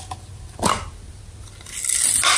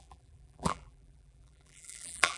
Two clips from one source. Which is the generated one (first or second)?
second